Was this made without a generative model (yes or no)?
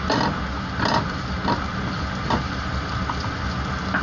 yes